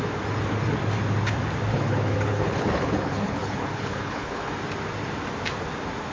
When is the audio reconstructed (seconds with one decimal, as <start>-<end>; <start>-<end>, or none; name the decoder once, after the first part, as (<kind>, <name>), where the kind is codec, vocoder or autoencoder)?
1.7-4.5 (codec, HILCodec)